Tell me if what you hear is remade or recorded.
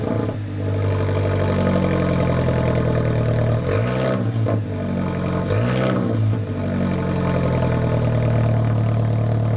recorded